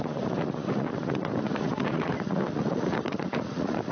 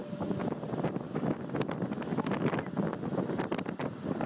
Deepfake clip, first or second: first